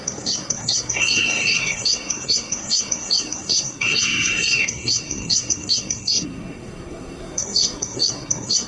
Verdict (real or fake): fake